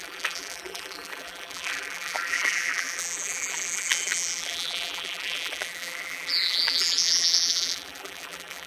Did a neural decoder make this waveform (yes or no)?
yes